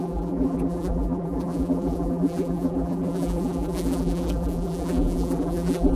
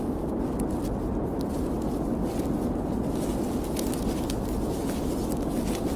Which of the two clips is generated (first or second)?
first